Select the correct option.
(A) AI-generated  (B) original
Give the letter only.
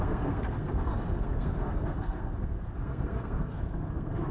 A